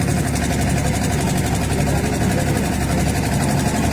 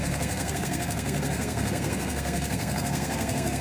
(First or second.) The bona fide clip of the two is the first